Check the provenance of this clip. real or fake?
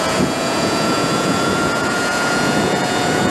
fake